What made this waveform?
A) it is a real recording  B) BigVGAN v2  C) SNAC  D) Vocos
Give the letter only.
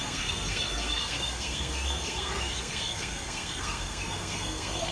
C